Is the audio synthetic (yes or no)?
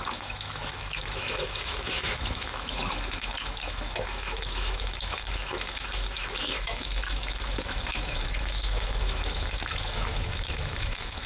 yes